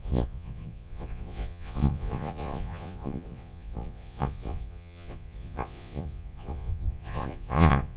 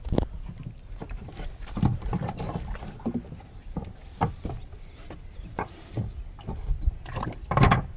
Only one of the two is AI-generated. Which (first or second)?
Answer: first